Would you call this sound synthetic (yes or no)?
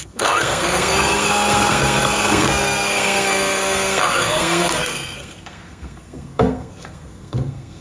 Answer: yes